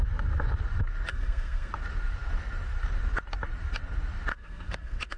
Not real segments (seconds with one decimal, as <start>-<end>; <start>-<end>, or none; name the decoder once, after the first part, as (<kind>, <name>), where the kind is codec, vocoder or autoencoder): 1.1-1.7 (codec, SNAC); 4.3-5.2